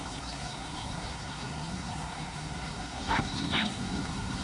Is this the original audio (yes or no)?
no